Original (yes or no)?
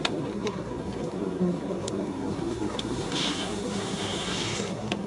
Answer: no